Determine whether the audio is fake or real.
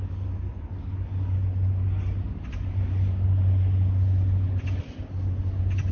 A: real